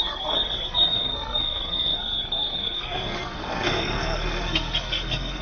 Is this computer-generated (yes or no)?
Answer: yes